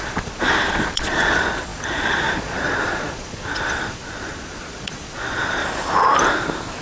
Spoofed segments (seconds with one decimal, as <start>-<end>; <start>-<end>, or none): 0.0-5.6